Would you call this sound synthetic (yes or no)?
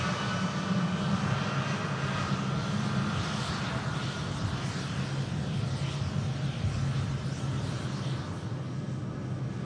no